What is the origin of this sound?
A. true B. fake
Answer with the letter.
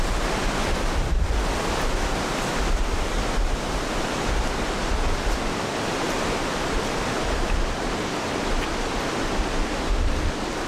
A